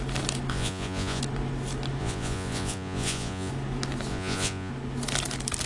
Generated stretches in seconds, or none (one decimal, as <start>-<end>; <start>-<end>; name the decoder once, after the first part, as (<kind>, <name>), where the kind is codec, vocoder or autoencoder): 0.5-1.2 (vocoder, Vocos); 2.0-3.5; 4.1-4.7